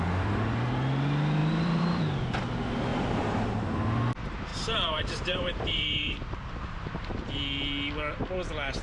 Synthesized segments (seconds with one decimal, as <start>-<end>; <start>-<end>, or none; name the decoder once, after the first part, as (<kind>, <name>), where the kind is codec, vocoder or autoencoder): 1.4-2.0 (vocoder, BigVGAN v2); 2.9-3.5; 4.5-7.1